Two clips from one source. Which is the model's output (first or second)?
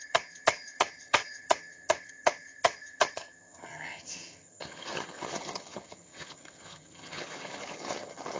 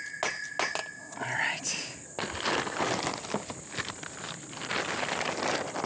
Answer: first